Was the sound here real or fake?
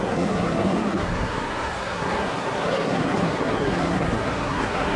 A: fake